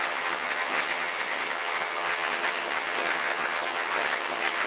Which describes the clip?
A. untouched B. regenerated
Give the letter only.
B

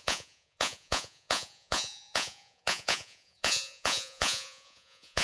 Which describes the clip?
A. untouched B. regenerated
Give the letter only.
B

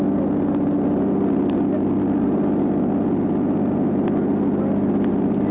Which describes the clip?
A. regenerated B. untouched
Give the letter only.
B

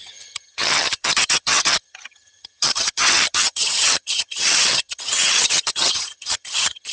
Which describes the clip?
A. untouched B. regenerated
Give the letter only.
B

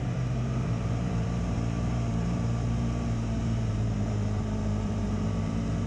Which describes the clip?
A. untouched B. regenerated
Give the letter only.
B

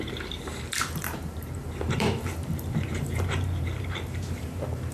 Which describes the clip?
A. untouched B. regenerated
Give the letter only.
B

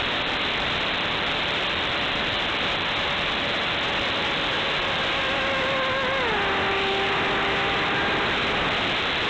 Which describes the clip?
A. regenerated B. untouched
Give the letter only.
A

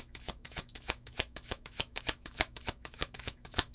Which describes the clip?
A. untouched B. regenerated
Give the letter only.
B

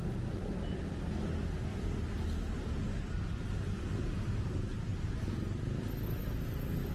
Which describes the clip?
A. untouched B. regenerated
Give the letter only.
A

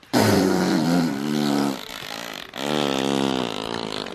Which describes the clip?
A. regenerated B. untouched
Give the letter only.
A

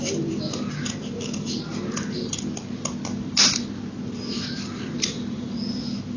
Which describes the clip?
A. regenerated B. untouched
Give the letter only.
B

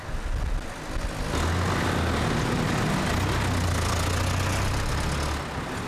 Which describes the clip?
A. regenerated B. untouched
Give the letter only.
B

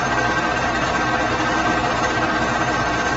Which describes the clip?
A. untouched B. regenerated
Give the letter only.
A